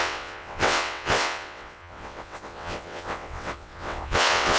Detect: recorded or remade remade